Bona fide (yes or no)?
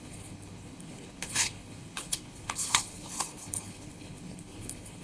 no